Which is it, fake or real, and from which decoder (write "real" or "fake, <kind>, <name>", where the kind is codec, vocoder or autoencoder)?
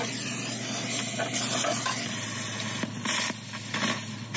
real